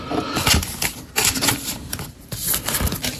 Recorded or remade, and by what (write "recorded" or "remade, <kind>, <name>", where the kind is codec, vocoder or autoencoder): remade, vocoder, BigVGAN v2